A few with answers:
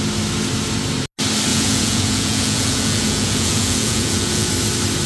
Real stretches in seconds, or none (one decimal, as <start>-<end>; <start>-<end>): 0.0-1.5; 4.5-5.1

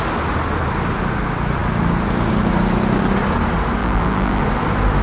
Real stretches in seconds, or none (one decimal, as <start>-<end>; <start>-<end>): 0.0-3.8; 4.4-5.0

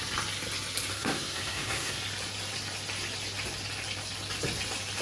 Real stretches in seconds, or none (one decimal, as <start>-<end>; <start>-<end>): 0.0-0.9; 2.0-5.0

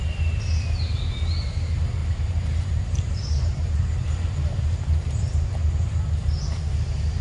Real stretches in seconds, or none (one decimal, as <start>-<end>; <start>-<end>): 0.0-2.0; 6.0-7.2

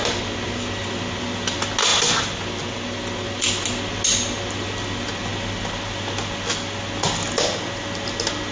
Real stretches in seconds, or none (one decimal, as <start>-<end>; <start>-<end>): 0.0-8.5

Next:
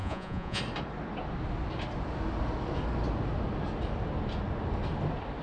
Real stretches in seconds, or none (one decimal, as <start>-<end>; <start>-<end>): 0.6-5.4

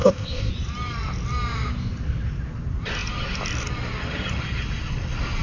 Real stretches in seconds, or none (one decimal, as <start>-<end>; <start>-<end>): 0.5-5.4

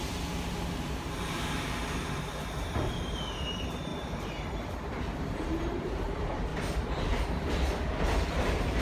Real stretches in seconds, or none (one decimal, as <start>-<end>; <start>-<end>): 1.8-3.1; 3.9-4.7; 6.5-8.3